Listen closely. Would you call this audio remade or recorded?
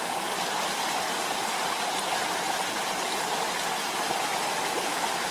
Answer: recorded